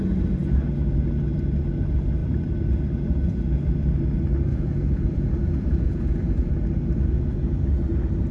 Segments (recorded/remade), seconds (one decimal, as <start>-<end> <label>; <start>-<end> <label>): 0.0-4.5 recorded; 4.5-6.5 remade; 6.5-8.3 recorded